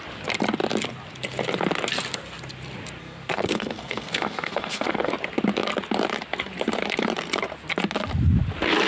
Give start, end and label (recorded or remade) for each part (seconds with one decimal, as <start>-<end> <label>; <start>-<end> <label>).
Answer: 0.0-3.0 recorded; 3.0-5.1 remade; 5.1-8.9 recorded